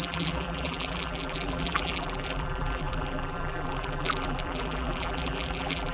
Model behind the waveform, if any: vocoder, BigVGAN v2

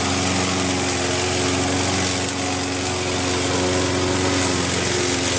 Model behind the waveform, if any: none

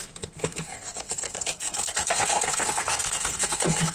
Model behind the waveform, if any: codec, SNAC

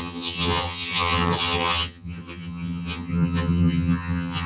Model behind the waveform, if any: vocoder, HiFi-GAN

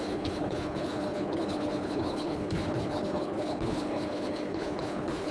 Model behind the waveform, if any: codec, HILCodec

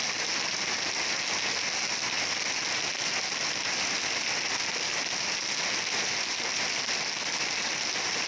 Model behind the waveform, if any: none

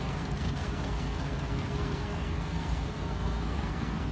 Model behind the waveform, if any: codec, SNAC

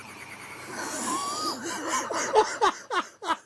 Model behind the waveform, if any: none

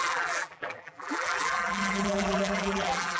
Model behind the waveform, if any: vocoder, BigVGAN v2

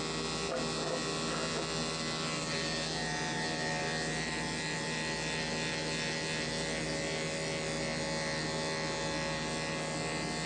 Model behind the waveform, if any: none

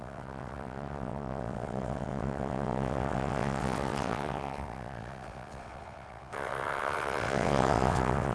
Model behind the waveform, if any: vocoder, WaveNeXt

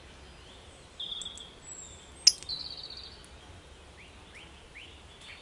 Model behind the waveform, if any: none